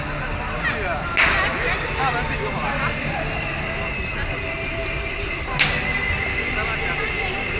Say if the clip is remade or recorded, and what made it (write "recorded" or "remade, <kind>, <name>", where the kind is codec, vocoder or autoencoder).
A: recorded